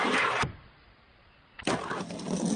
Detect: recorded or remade recorded